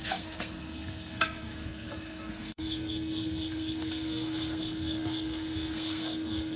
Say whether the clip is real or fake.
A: fake